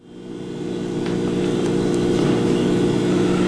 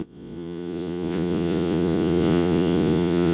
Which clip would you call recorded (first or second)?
first